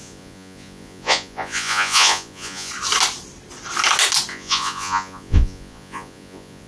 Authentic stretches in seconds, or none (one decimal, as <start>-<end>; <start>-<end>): 2.7-4.3